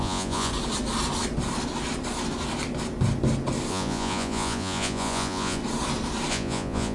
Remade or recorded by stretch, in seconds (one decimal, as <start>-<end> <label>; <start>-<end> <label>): 0.0-0.5 remade; 0.5-3.7 recorded; 3.7-5.6 remade; 5.6-6.3 recorded; 6.3-6.9 remade

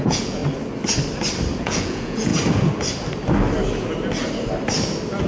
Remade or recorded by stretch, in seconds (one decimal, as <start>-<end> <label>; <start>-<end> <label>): 0.0-0.4 remade; 0.4-1.6 recorded; 1.6-2.3 remade; 2.3-5.3 recorded